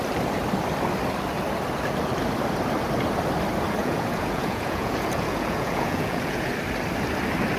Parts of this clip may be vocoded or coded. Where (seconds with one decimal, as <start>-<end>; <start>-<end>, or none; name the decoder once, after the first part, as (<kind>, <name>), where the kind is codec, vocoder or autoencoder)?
3.8-6.5 (vocoder, Vocos)